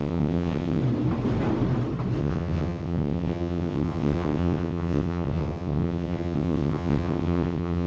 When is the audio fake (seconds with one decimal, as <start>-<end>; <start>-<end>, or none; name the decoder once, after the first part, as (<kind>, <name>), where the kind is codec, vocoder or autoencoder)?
0.0-0.8 (vocoder, WaveNeXt); 2.2-7.9